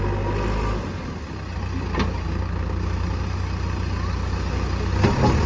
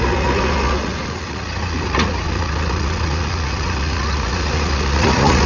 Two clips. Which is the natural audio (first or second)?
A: first